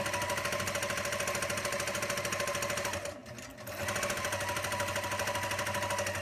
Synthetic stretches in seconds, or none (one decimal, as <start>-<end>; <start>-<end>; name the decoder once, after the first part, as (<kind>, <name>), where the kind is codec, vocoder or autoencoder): none